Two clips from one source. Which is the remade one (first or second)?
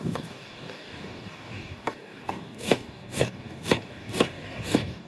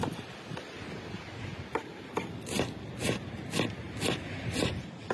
first